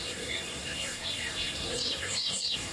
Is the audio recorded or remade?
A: remade